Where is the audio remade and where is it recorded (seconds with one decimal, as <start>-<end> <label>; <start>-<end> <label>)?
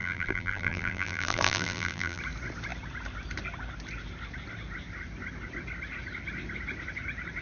0.0-2.2 remade; 2.2-7.4 recorded